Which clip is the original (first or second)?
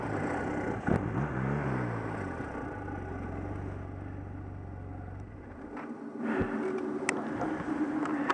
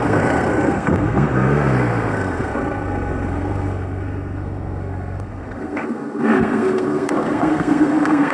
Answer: first